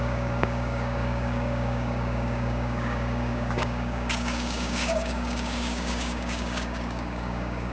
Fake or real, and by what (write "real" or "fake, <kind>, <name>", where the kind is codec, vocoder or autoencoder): fake, codec, DAC